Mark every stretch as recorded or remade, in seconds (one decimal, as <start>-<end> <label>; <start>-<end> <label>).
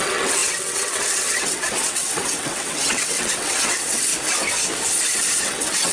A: 0.0-4.1 remade; 4.1-5.4 recorded; 5.4-5.9 remade